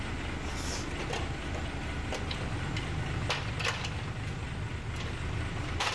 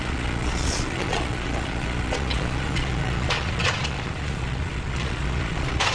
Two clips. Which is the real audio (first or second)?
first